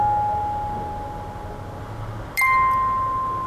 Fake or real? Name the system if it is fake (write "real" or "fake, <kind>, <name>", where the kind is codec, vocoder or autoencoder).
real